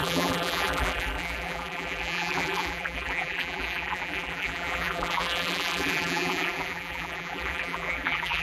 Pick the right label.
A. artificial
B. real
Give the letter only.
A